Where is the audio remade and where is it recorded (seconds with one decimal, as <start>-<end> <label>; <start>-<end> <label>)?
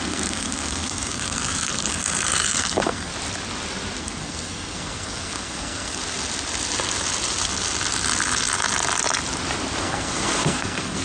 0.0-3.1 remade; 3.1-4.0 recorded; 4.0-6.0 remade; 6.0-9.8 recorded; 9.8-11.0 remade